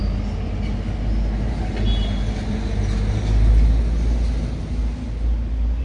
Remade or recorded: recorded